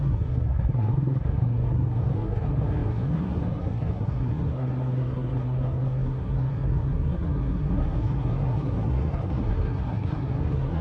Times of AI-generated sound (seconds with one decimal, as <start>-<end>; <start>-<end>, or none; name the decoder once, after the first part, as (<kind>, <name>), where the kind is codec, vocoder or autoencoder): 0.0-10.8 (codec, SNAC)